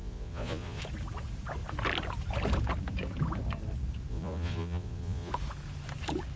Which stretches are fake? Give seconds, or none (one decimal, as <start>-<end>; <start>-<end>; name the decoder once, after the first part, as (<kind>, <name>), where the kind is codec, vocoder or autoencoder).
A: 0.0-0.8 (vocoder, Vocos); 4.1-5.3